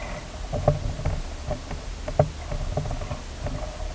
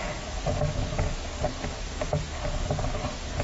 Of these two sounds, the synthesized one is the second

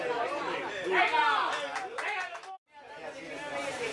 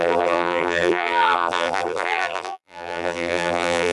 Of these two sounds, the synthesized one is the second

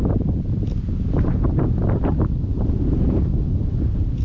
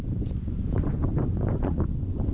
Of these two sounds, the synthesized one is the second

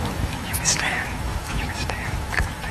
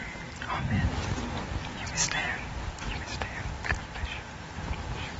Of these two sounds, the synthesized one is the first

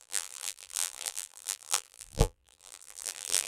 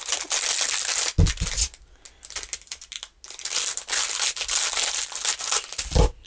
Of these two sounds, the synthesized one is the first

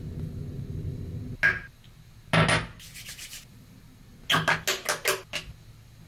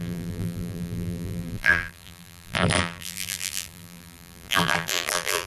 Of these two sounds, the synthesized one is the second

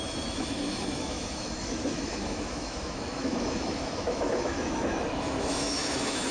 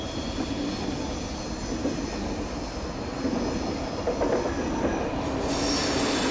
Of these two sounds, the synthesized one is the first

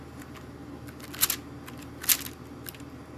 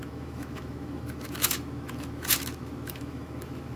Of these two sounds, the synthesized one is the second